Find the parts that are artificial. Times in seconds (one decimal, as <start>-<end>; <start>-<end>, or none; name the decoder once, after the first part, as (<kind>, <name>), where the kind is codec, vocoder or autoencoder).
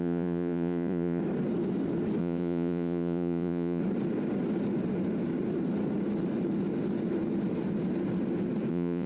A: 0.0-1.2 (vocoder, Vocos); 2.2-3.8; 8.7-9.1